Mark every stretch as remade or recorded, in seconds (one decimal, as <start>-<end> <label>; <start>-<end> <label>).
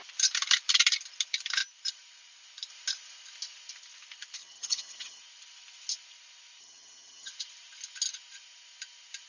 0.0-4.4 recorded; 4.4-5.2 remade; 5.2-6.6 recorded; 6.6-7.3 remade; 7.3-9.3 recorded